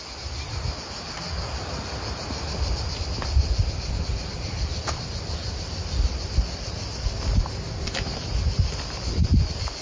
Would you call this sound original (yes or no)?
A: no